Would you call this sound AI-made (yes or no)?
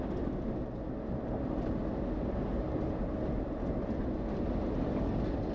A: no